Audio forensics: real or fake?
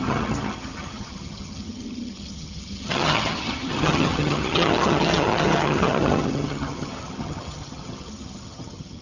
fake